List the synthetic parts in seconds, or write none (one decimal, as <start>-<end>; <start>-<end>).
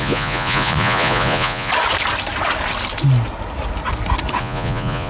0.0-1.7; 4.4-5.1